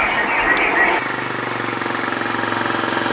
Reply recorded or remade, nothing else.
recorded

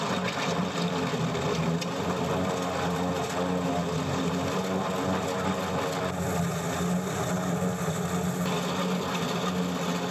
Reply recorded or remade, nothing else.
recorded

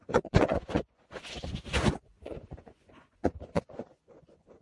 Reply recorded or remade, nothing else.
remade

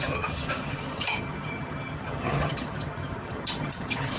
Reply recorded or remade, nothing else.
remade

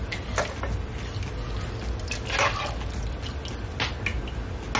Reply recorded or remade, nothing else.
recorded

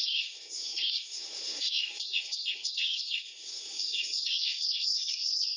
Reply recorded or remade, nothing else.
remade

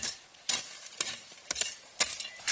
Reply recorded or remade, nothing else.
remade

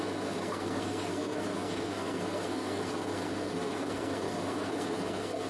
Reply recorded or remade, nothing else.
remade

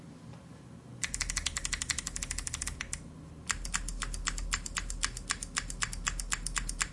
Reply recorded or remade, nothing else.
recorded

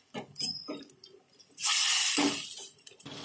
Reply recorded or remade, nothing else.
recorded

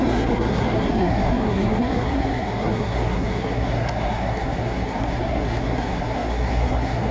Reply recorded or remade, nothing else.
remade